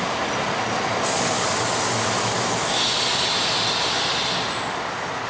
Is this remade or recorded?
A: recorded